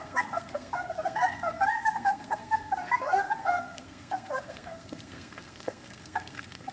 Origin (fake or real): fake